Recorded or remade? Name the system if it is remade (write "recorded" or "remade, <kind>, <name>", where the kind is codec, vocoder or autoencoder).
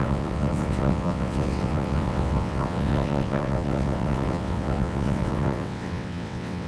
remade, vocoder, WaveNeXt